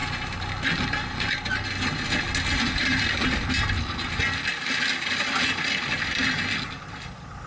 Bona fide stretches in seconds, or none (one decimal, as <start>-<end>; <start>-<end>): 0.0-7.5